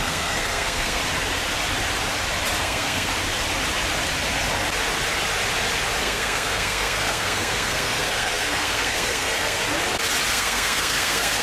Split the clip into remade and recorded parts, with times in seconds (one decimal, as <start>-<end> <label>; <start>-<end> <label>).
0.0-1.0 remade; 1.0-2.6 recorded; 2.6-3.1 remade; 3.1-6.0 recorded; 6.0-9.6 remade; 9.6-10.3 recorded; 10.3-11.4 remade